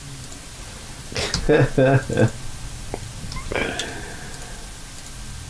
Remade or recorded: recorded